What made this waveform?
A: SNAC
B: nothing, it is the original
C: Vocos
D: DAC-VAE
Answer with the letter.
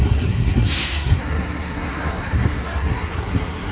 A